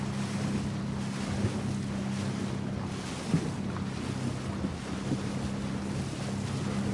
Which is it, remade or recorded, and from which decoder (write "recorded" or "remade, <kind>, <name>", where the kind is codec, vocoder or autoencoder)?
recorded